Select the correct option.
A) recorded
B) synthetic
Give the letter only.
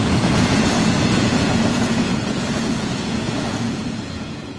B